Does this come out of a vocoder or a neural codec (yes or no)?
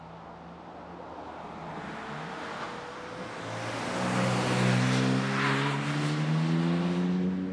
no